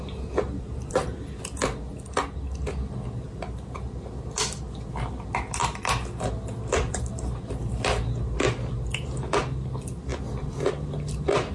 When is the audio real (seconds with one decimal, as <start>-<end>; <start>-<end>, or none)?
0.0-11.5